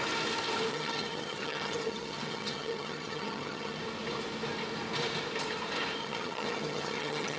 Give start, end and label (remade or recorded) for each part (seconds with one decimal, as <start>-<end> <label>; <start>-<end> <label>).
0.0-0.7 recorded; 0.7-3.8 remade; 3.8-6.0 recorded; 6.0-7.4 remade